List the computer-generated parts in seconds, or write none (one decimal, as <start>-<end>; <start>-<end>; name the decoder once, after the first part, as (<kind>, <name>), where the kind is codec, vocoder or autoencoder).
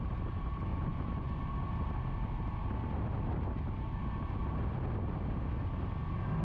0.7-1.5 (vocoder, Vocos)